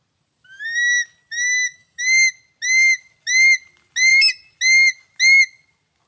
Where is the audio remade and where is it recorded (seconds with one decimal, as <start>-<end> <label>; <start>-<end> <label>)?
0.0-1.7 recorded; 1.7-2.3 remade; 2.3-6.1 recorded